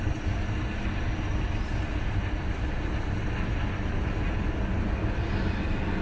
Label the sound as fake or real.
real